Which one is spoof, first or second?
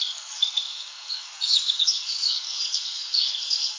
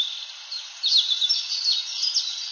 first